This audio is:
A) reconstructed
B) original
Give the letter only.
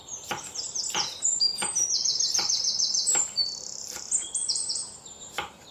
A